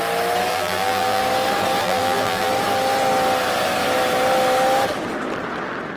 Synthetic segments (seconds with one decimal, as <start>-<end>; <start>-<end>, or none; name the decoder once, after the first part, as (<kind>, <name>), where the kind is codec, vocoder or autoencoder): 0.5-1.2 (vocoder, BigVGAN v2); 1.8-2.5